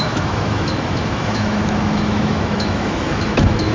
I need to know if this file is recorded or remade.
remade